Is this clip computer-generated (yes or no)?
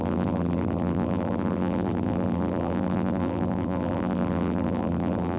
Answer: yes